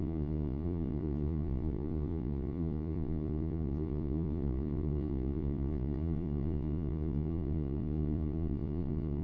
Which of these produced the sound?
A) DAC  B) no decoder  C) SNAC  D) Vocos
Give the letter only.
D